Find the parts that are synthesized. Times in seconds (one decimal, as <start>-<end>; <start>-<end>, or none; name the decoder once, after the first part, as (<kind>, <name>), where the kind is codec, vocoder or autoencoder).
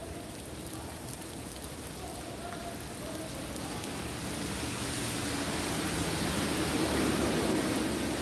0.0-0.7 (vocoder, BigVGAN v2)